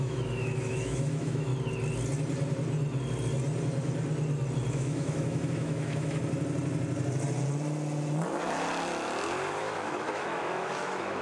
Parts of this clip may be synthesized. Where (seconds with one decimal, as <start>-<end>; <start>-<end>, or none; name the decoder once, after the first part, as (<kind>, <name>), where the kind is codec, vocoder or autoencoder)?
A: 0.0-1.5 (autoencoder, DAC-VAE); 4.7-6.2; 9.6-11.2